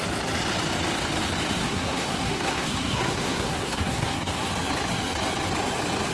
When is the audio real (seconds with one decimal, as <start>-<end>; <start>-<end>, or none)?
0.0-1.6; 4.5-6.1